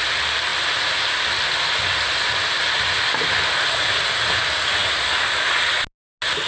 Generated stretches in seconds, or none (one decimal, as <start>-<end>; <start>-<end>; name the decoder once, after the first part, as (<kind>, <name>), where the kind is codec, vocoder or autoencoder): none